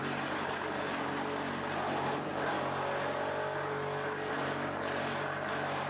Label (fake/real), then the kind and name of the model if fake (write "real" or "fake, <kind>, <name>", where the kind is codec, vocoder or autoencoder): real